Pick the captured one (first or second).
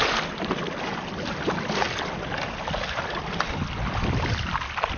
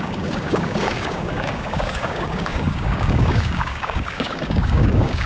first